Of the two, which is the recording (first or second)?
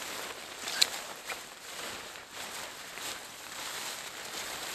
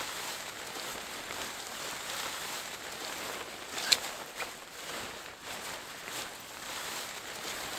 second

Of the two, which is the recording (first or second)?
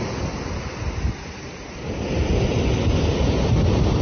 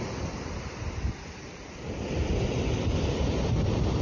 first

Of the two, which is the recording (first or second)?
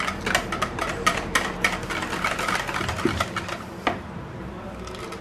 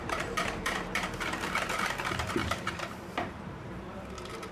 first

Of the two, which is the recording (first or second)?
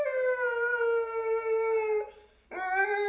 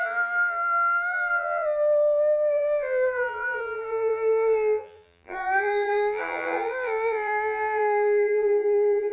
first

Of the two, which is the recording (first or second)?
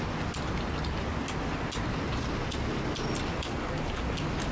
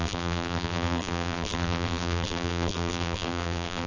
first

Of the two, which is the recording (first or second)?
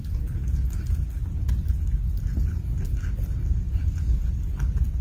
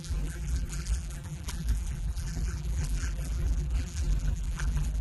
first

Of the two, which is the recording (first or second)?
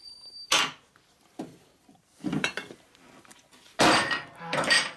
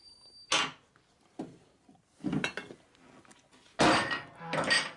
second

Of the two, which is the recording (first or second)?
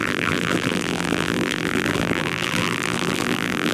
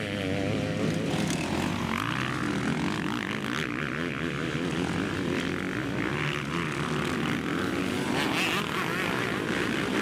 second